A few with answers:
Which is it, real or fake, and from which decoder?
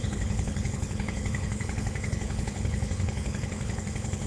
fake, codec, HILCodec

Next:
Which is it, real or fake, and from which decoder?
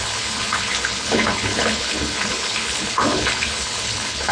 fake, codec, HILCodec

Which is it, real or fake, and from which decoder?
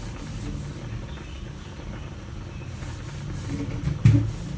real